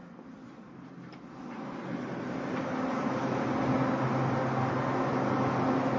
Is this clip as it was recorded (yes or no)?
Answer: yes